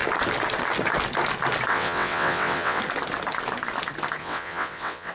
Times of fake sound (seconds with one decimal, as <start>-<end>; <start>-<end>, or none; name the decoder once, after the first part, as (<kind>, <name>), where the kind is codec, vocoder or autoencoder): 1.7-2.8 (vocoder, WaveNeXt); 4.2-5.1